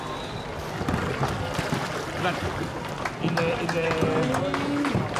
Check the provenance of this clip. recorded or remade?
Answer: recorded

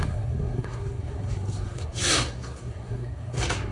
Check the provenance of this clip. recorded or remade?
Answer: remade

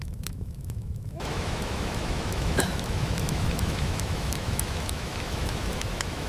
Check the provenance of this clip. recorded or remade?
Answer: remade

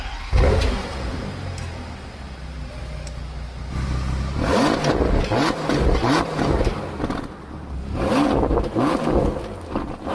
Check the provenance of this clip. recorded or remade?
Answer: recorded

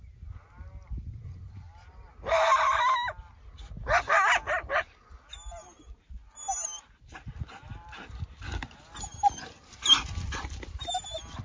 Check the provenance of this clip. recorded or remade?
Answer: recorded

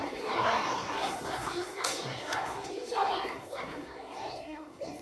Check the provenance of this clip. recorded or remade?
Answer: remade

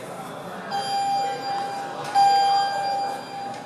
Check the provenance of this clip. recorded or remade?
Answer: recorded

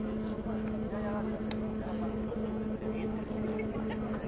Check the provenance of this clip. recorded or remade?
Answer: recorded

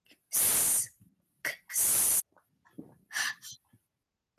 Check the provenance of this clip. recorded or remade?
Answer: recorded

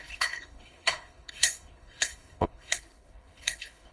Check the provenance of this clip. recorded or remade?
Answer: remade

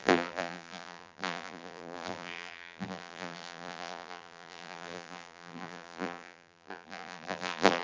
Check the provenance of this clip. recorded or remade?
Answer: remade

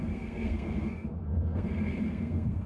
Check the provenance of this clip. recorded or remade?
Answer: remade